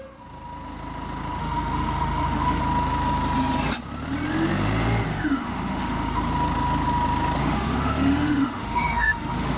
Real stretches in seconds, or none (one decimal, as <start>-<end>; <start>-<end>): 0.0-1.4; 2.6-5.1; 6.3-7.4